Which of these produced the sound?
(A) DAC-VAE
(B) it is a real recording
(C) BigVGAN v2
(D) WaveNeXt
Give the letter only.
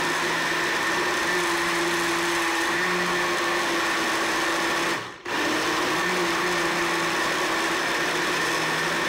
B